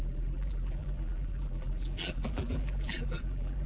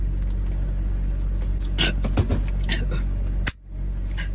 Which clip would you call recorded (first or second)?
second